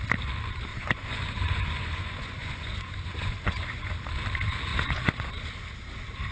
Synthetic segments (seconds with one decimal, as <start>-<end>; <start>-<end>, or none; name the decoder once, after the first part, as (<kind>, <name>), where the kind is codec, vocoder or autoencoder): 0.7-3.9 (vocoder, Vocos); 4.7-5.3

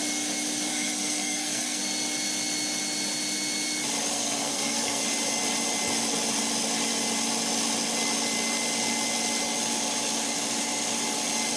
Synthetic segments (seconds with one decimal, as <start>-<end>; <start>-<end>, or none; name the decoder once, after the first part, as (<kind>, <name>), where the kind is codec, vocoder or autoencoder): 0.7-1.8 (codec, SNAC); 4.1-5.0